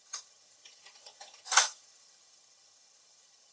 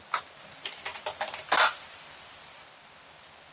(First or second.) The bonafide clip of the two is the second